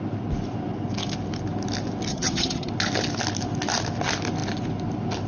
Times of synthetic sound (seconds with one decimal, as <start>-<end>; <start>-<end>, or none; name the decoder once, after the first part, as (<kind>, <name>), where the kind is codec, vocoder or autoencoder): 2.1-2.7 (vocoder, HiFi-GAN)